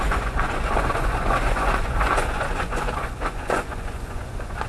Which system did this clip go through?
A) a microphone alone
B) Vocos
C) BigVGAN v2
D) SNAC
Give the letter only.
B